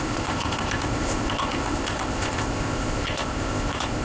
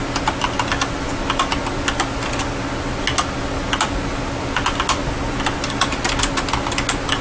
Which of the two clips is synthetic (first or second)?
first